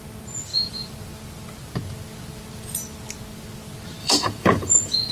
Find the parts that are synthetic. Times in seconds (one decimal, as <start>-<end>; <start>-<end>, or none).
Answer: 4.0-5.1